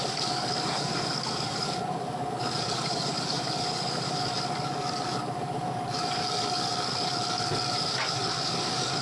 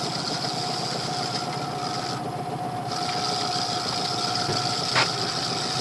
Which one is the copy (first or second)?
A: first